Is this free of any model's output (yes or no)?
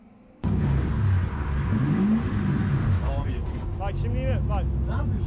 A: yes